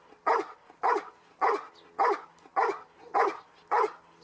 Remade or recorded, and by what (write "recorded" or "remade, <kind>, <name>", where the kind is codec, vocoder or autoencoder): recorded